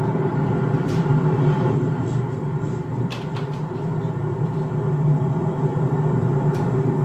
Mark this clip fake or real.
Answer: fake